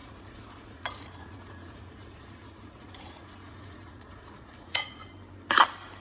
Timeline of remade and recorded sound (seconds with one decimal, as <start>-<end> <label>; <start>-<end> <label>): 0.0-5.0 remade; 5.0-6.0 recorded